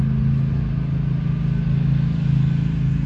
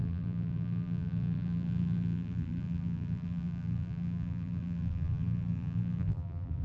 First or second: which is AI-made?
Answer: second